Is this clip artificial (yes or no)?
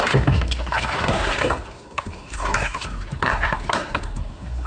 yes